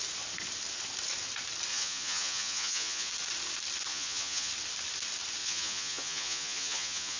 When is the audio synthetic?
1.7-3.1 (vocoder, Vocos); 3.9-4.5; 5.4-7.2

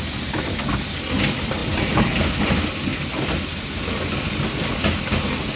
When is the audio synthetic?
none